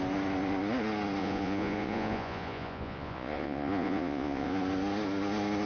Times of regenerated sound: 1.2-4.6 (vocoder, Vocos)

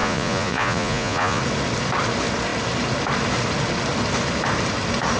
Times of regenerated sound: 0.0-1.4 (vocoder, Vocos)

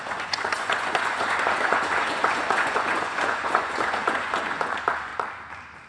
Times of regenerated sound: 0.0-5.1 (vocoder, Vocos)